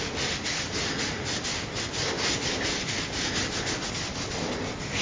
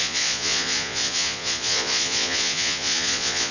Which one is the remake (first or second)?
second